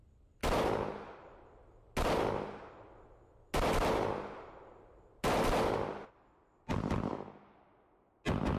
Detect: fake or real real